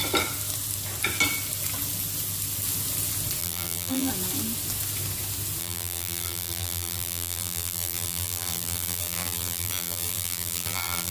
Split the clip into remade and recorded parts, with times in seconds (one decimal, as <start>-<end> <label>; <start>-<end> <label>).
0.0-3.4 recorded; 3.4-4.1 remade; 4.1-5.6 recorded; 5.6-11.1 remade

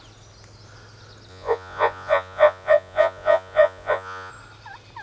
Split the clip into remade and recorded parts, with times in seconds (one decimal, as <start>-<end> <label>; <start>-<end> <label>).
0.0-1.3 recorded; 1.3-4.3 remade; 4.3-5.0 recorded

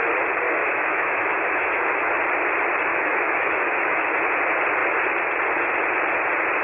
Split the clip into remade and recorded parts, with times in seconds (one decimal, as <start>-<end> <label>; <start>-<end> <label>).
0.0-0.6 recorded; 0.6-2.1 remade; 2.1-2.9 recorded; 2.9-4.1 remade; 4.1-6.6 recorded

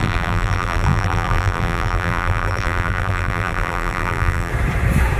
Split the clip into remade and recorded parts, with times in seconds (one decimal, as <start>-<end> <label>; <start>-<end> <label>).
0.0-4.5 remade; 4.5-5.2 recorded

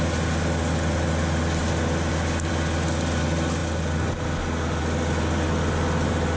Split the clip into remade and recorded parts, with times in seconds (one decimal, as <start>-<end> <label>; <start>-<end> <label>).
0.0-6.4 recorded